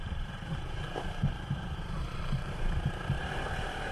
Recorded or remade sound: remade